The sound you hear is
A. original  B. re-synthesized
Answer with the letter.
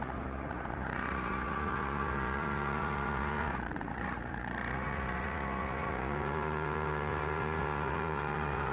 B